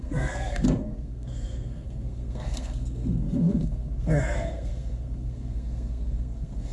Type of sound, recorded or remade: remade